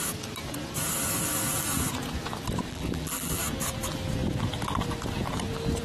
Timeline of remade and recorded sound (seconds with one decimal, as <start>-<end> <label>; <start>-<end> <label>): 0.0-2.7 recorded; 2.7-3.4 remade; 3.4-5.8 recorded